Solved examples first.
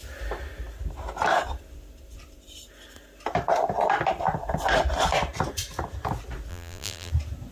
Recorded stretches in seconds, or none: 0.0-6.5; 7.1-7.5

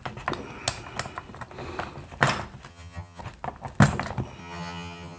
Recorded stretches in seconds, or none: 0.0-2.7; 3.2-4.4

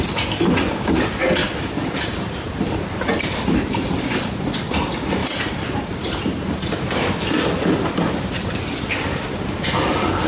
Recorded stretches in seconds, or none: 0.0-1.4; 3.7-5.2; 6.0-10.3

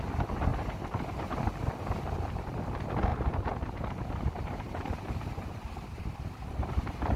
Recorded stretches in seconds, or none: 0.0-0.5; 1.4-3.1; 6.1-7.2